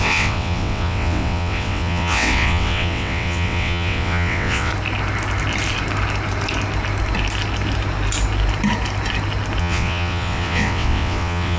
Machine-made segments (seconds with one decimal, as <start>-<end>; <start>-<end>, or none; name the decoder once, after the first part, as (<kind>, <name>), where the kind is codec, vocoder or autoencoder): 0.0-4.7 (vocoder, WaveNeXt); 9.6-11.6